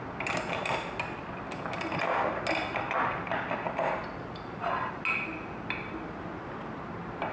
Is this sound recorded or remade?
recorded